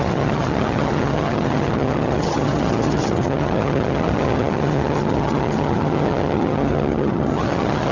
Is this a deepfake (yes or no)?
yes